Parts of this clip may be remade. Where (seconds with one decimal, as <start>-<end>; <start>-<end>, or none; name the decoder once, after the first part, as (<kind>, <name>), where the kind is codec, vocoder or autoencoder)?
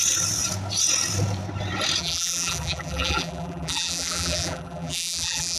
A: 2.0-5.6 (vocoder, BigVGAN v2)